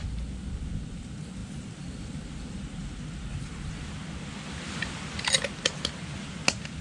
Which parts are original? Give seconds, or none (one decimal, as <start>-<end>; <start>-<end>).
0.0-6.8